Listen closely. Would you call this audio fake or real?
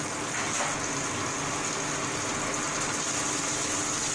real